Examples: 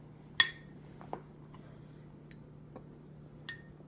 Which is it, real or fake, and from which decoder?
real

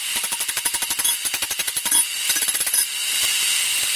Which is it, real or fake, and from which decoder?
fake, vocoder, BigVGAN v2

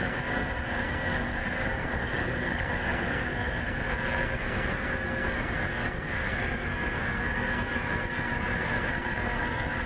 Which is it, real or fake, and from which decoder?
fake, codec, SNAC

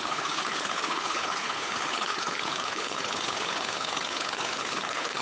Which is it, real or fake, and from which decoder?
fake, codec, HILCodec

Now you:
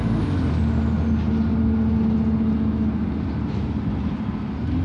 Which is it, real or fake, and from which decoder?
real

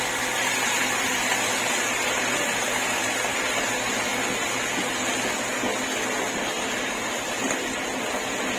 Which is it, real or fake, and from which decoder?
real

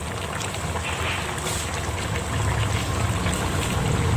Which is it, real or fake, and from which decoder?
real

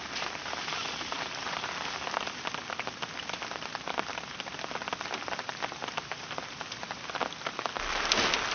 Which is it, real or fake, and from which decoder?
real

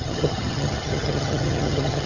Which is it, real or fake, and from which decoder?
fake, vocoder, HiFi-GAN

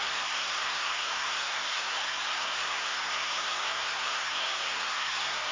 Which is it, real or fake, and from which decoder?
fake, codec, SNAC